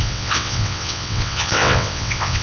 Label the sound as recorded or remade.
remade